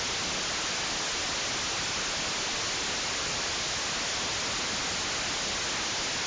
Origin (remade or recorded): recorded